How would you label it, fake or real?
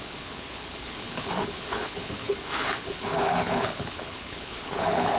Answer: fake